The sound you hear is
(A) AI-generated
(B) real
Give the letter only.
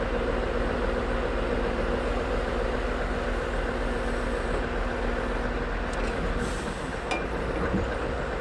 B